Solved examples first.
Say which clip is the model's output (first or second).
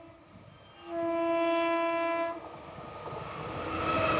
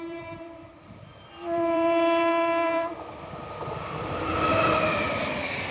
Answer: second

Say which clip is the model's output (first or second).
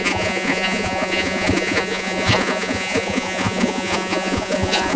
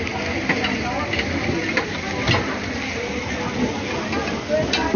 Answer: first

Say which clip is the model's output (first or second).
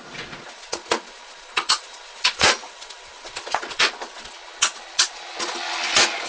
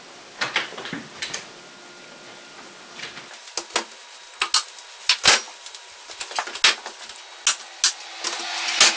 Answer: first